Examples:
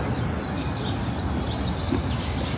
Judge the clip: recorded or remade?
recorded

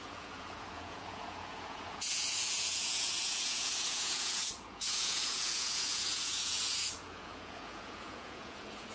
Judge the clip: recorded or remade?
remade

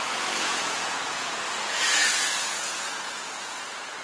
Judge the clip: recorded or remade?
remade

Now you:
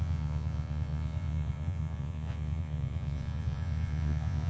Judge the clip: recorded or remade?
remade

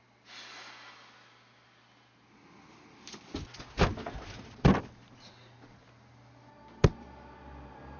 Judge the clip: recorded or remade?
recorded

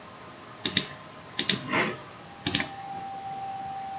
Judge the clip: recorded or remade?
recorded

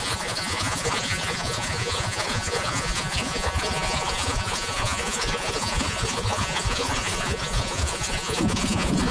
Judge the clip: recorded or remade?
remade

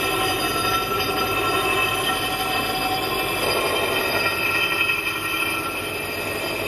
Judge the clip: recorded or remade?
recorded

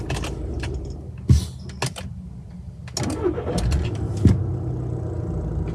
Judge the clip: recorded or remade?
recorded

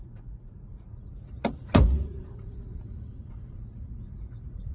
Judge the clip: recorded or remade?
remade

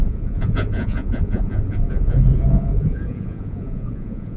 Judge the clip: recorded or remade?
remade